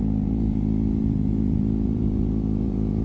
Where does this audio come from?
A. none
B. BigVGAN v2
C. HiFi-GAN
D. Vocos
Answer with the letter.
D